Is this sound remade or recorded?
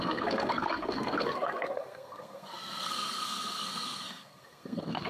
remade